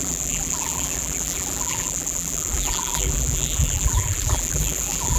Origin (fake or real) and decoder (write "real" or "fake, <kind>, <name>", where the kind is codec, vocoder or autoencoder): fake, vocoder, BigVGAN v2